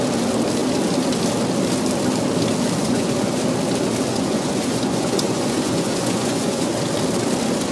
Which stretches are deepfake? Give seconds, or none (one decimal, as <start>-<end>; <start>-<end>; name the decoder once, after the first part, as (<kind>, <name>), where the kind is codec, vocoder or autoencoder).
2.8-3.4 (vocoder, Vocos); 4.1-6.7